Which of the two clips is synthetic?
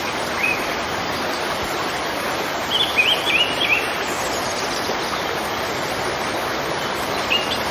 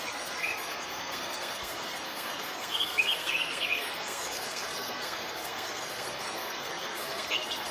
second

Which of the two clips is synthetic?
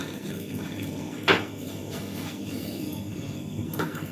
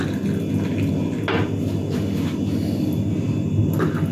first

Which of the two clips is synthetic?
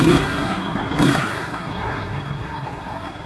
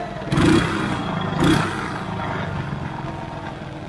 first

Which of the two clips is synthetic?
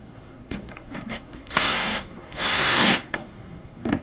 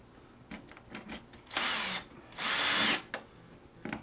first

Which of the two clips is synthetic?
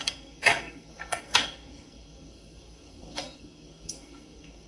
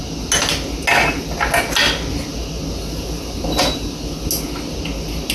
first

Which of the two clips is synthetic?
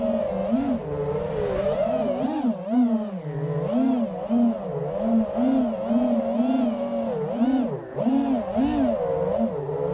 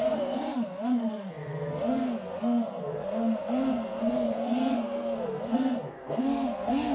second